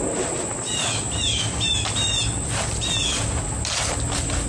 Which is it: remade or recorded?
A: recorded